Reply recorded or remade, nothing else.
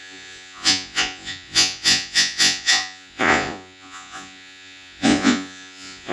remade